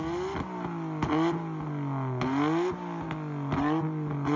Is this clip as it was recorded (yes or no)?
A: yes